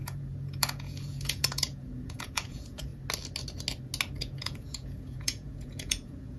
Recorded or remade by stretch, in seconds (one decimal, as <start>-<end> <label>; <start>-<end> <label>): 0.0-2.9 remade; 2.9-4.2 recorded; 4.2-6.4 remade